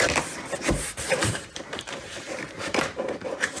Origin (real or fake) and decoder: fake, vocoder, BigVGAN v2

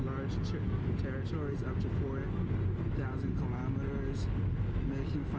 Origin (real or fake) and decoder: real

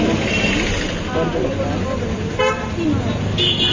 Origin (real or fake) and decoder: real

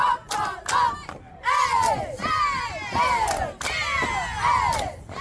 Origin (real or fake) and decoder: real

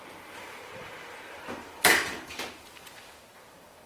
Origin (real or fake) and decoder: fake, vocoder, BigVGAN v2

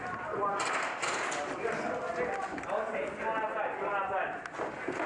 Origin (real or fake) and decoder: real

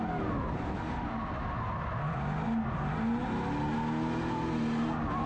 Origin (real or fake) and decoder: real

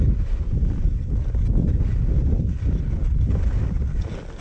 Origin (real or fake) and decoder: real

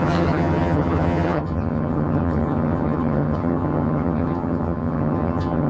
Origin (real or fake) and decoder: fake, vocoder, HiFi-GAN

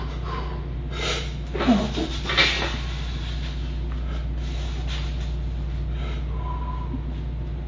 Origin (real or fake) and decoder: real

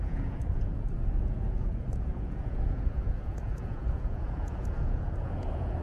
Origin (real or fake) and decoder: fake, vocoder, Vocos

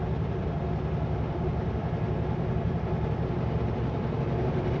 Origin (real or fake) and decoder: fake, vocoder, BigVGAN v2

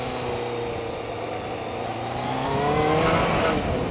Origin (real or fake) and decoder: real